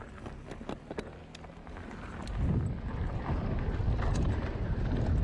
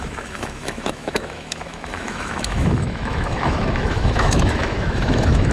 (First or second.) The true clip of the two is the first